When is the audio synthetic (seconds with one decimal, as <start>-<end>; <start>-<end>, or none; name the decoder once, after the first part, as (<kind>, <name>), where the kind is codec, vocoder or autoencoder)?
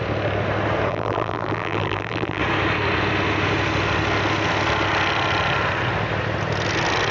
0.9-2.4 (vocoder, BigVGAN v2)